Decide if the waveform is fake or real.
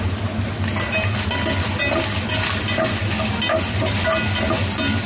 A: real